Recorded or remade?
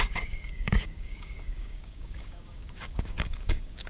remade